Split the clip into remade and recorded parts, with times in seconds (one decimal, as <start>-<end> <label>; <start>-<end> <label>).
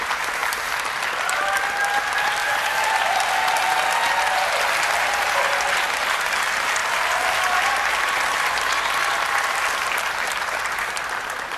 0.0-11.6 recorded